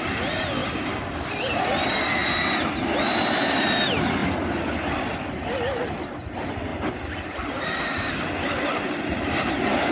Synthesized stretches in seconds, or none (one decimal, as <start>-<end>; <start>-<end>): none